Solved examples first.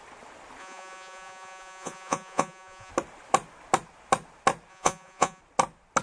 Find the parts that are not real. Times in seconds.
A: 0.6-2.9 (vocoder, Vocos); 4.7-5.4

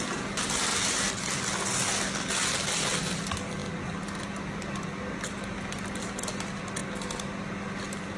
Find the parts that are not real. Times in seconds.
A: none

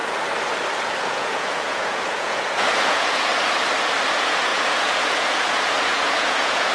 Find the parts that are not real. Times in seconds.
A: 1.0-3.3 (vocoder, Vocos); 4.1-6.7

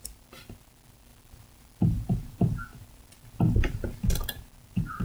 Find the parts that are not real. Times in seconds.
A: none

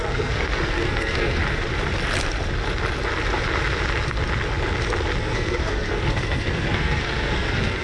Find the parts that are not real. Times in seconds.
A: 0.0-1.4 (codec, SNAC); 5.2-7.8

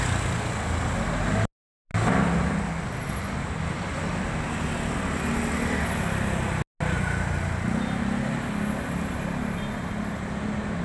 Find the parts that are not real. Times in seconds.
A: none

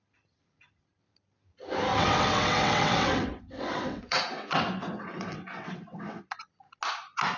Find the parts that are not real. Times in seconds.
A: 1.9-6.2 (vocoder, WaveNeXt)

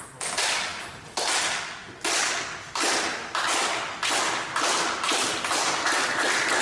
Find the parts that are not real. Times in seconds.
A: none